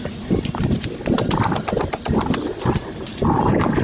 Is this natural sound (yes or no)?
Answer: yes